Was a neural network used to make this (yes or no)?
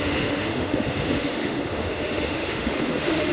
yes